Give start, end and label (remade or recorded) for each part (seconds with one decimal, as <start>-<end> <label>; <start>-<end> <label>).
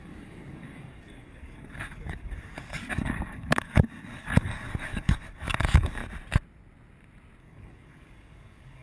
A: 0.0-6.0 remade; 6.0-7.4 recorded; 7.4-8.8 remade